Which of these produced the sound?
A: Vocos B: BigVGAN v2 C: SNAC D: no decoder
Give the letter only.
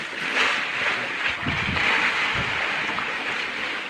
D